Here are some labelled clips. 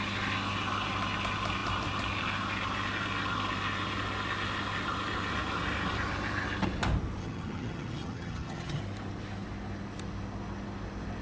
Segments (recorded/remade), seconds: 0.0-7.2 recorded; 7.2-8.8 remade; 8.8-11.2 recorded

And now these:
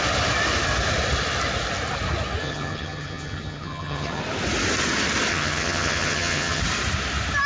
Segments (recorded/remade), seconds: 0.0-2.4 recorded; 2.4-4.2 remade; 4.2-5.3 recorded; 5.3-6.6 remade; 6.6-7.5 recorded

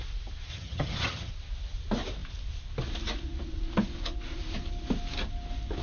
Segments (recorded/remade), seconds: 0.0-0.5 recorded; 0.5-1.3 remade; 1.3-5.8 recorded

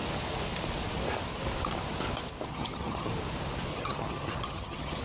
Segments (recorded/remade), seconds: 0.0-2.5 recorded; 2.5-3.1 remade; 3.1-3.7 recorded; 3.7-5.0 remade

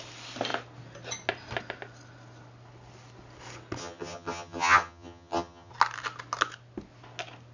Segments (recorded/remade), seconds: 0.0-3.8 recorded; 3.8-5.7 remade; 5.7-7.5 recorded

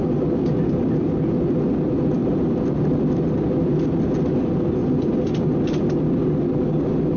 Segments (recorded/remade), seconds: 0.0-7.2 recorded

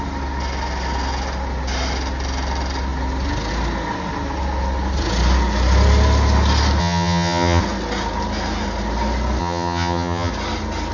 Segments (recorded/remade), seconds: 0.0-6.8 recorded; 6.8-7.6 remade; 7.6-9.4 recorded; 9.4-10.3 remade; 10.3-10.9 recorded